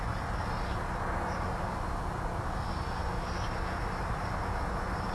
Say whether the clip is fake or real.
real